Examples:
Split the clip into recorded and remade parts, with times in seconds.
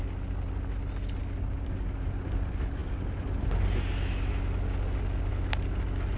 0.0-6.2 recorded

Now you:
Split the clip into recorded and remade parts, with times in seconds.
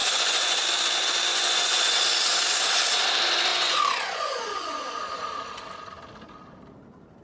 0.0-0.6 remade; 0.6-1.3 recorded; 1.3-2.0 remade; 2.0-3.5 recorded; 3.5-5.0 remade; 5.0-7.2 recorded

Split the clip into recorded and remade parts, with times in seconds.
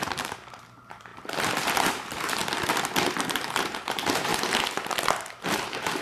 0.0-2.4 remade; 2.4-3.1 recorded; 3.1-4.3 remade; 4.3-5.4 recorded; 5.4-6.0 remade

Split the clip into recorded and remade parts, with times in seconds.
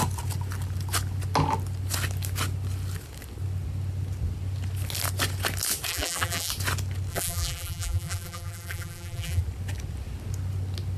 0.0-5.9 recorded; 5.9-6.5 remade; 6.5-7.1 recorded; 7.1-9.4 remade; 9.4-11.0 recorded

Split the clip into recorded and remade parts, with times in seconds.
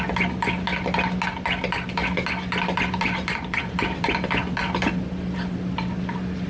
0.0-6.5 recorded